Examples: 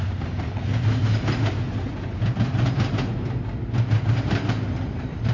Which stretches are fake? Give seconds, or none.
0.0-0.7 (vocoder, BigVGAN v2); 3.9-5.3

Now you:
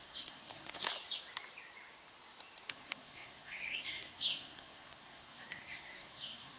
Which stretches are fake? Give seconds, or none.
0.0-0.9 (codec, SNAC); 2.7-6.6